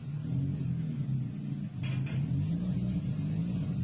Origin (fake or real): real